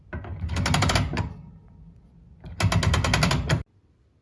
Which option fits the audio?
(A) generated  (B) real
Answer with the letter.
B